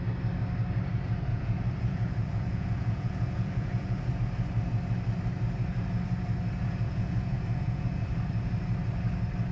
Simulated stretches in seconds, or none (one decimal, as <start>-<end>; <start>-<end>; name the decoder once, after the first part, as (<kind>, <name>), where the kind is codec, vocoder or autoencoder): 1.3-4.1 (vocoder, Vocos); 6.6-8.1